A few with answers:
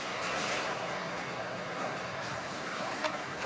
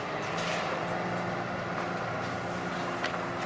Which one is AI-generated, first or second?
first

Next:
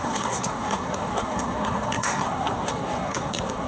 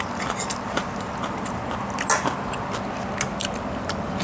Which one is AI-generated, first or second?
first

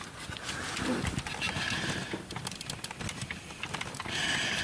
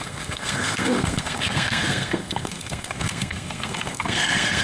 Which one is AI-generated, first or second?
second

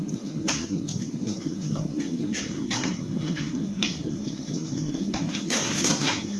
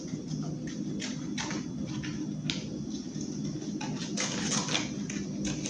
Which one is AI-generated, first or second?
first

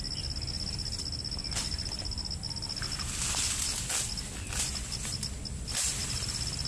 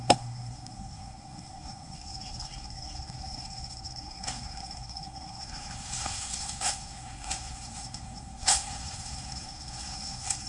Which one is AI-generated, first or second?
second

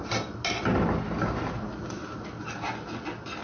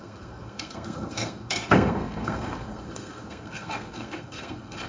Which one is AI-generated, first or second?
second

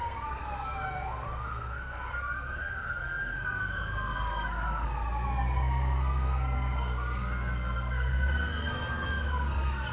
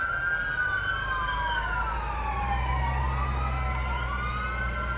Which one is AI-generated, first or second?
first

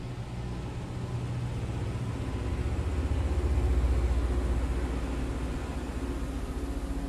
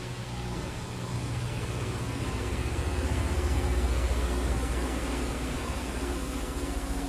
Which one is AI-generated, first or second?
second